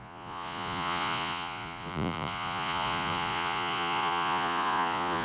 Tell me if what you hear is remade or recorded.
remade